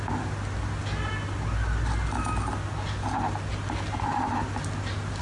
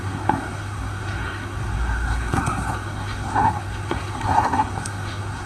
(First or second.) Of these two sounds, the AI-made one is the second